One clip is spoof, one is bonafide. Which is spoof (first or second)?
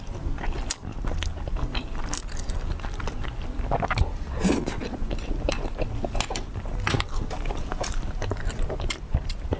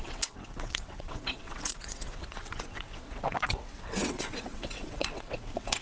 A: second